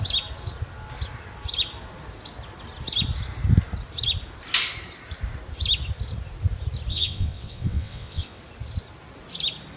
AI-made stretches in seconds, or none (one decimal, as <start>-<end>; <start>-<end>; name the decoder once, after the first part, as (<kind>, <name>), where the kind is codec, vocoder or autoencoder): 6.9-8.4 (vocoder, WaveNeXt)